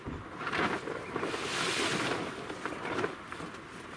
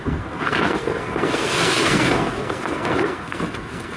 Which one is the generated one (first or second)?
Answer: second